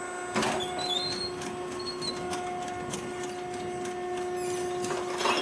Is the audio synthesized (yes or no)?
no